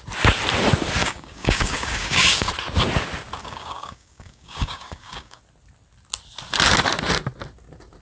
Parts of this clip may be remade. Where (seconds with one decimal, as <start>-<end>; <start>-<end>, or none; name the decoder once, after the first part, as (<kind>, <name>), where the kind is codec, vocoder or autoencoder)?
1.0-2.5 (codec, DAC); 3.4-5.4